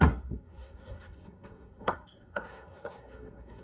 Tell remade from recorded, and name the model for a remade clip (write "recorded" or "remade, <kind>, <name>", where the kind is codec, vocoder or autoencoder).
remade, codec, SNAC